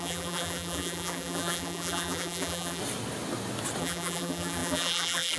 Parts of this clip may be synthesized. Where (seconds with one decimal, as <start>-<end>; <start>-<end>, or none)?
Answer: 0.0-2.8; 3.8-5.4